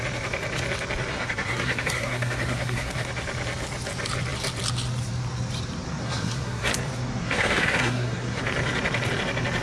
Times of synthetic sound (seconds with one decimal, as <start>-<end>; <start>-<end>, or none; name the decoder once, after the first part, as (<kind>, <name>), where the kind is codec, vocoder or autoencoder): 1.1-3.1 (codec, SNAC); 6.0-6.7; 7.2-8.4